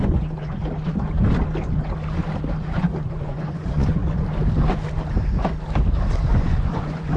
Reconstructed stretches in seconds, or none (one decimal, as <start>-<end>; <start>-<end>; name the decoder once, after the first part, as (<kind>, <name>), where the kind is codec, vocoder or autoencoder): 0.0-0.6 (vocoder, Vocos); 2.6-4.0; 6.3-7.2